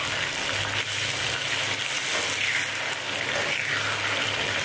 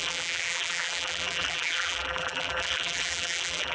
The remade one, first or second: second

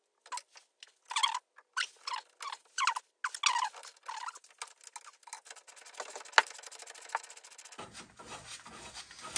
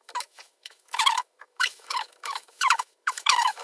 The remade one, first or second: second